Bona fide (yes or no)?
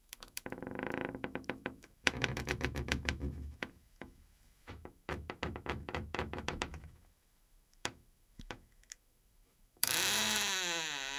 no